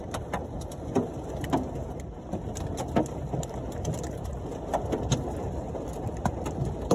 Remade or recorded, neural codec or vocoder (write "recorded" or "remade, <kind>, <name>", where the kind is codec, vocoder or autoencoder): recorded